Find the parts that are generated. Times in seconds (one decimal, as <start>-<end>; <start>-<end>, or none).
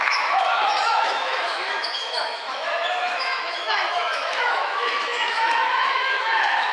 0.0-6.7